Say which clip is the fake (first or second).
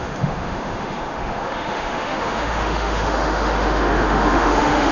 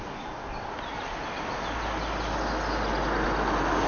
first